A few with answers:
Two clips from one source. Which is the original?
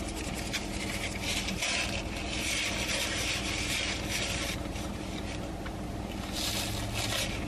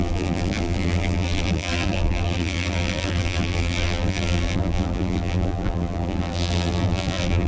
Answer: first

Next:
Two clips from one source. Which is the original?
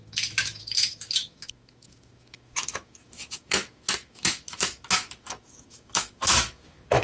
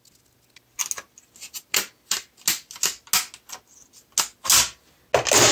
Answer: second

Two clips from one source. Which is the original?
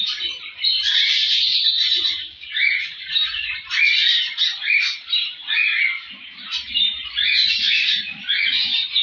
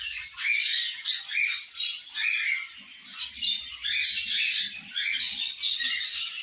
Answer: second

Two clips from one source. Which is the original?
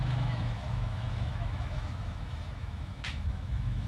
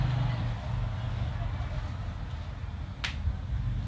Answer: second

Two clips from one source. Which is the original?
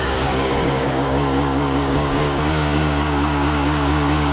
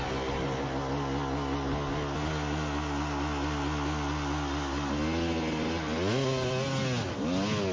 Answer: second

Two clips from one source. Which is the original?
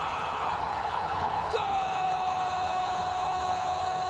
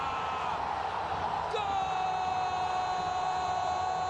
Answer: second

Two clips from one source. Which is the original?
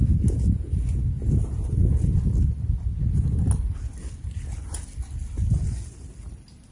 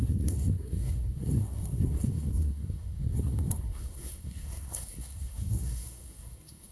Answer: first